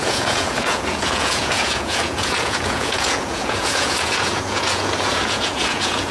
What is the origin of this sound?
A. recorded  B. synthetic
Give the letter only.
B